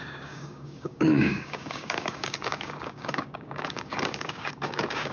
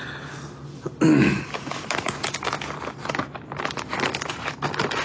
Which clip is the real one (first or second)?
second